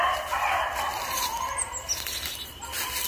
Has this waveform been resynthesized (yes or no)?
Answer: no